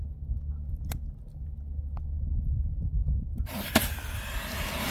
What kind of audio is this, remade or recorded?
recorded